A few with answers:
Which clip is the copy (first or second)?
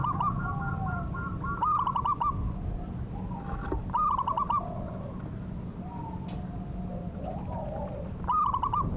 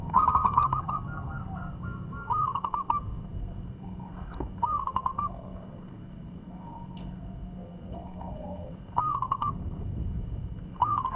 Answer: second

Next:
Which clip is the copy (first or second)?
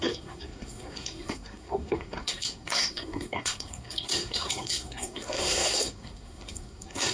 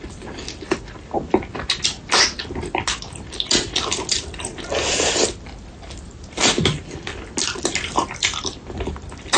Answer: first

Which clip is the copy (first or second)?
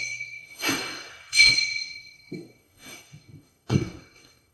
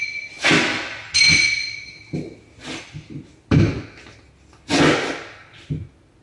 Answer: first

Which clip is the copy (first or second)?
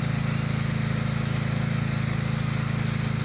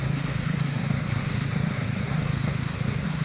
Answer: second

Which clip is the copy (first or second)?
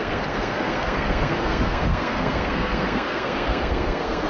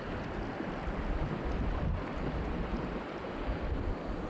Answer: first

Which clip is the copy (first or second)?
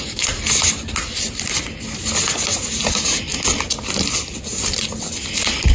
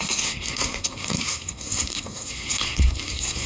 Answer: second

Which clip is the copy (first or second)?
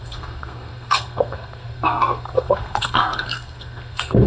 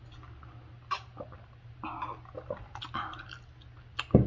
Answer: first